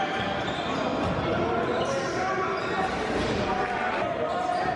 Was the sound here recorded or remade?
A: recorded